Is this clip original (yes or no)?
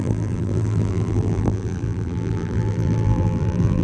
no